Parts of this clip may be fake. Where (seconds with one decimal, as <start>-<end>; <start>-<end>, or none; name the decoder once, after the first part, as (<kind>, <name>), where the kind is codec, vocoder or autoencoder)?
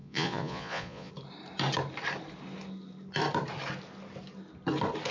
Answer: 0.0-1.1 (vocoder, Vocos)